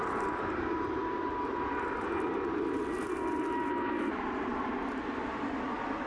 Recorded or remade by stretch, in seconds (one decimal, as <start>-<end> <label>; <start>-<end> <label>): 0.0-6.1 recorded

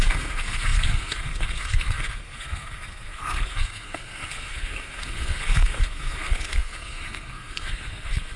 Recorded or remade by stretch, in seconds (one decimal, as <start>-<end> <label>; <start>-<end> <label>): 0.0-8.4 remade

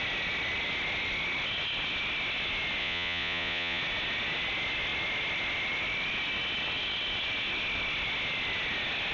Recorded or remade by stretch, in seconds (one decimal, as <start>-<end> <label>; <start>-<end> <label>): 0.0-2.8 recorded; 2.8-3.8 remade; 3.8-9.1 recorded

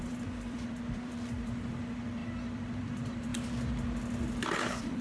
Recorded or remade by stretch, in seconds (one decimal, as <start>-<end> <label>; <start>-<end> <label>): 0.0-3.3 remade; 3.3-4.5 recorded; 4.5-5.0 remade

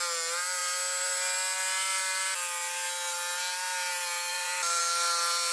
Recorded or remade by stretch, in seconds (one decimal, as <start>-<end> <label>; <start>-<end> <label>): 0.0-4.3 recorded; 4.3-4.8 remade; 4.8-5.5 recorded